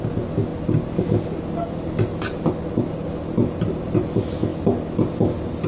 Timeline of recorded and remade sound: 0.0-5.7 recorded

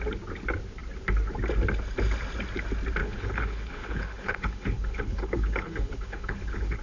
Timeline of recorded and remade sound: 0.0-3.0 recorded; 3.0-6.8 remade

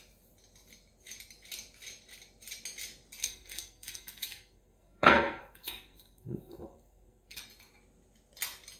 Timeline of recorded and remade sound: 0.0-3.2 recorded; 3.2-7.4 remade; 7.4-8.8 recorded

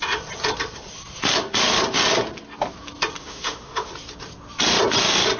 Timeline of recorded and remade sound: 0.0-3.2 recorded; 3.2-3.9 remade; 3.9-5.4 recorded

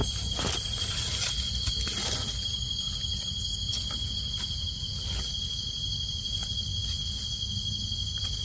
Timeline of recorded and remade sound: 0.0-8.4 recorded

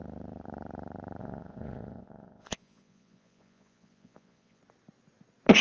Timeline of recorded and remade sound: 0.0-1.2 recorded; 1.2-4.6 remade; 4.6-5.6 recorded